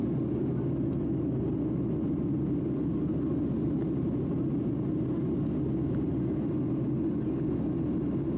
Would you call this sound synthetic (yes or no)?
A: no